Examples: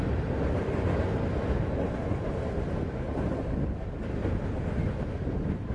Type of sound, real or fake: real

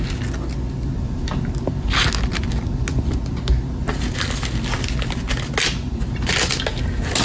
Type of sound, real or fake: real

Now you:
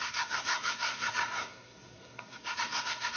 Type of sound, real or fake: fake